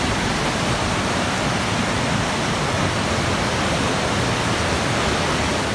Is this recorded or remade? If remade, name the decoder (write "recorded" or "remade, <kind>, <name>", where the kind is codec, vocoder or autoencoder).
recorded